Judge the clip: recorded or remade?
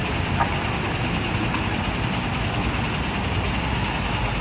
recorded